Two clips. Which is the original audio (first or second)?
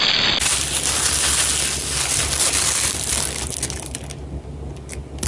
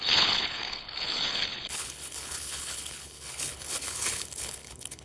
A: first